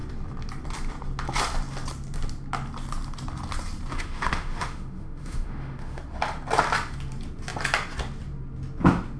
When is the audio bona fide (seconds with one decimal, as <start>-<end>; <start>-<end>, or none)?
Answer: 0.0-3.9; 6.0-9.2